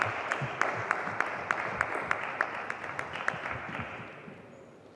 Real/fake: real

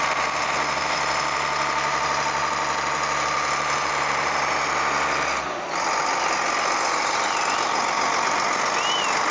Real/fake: real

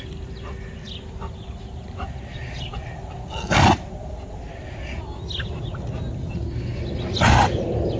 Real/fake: real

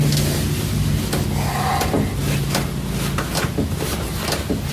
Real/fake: real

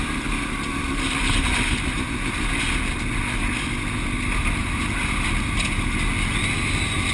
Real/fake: real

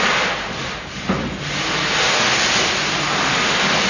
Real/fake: real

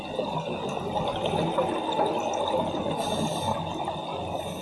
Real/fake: real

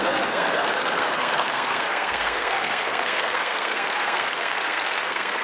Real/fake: fake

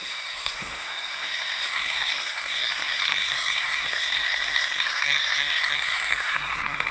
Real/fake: fake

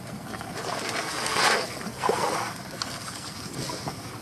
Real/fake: fake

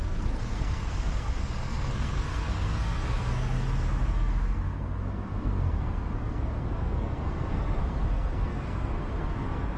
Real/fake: fake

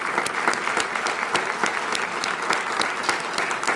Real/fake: real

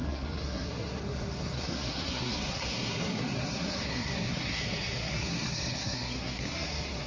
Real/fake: fake